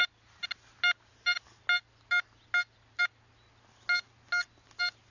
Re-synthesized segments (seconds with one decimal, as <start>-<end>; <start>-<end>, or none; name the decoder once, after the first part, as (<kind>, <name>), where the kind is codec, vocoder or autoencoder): none